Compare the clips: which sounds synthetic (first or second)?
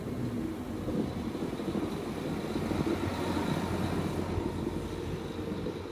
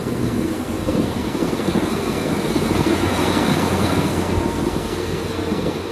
second